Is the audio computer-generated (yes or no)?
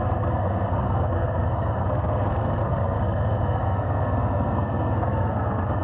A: yes